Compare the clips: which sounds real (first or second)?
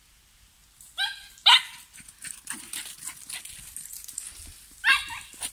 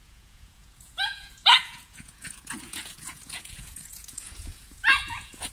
first